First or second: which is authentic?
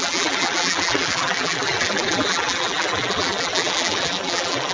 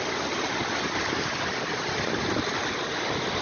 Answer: second